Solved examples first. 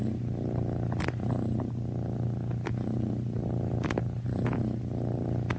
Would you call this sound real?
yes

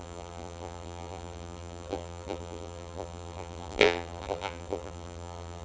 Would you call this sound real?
no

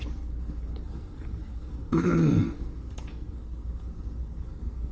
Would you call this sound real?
no